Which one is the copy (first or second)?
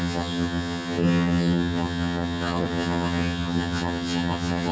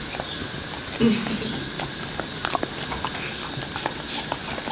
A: first